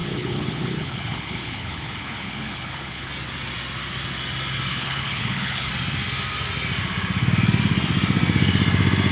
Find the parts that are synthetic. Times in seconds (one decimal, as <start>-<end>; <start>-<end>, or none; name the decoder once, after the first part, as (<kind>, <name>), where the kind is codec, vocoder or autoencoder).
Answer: 0.0-3.1 (codec, HILCodec); 4.7-5.7